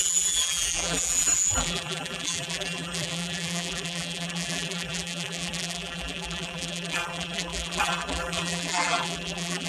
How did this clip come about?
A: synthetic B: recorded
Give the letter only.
A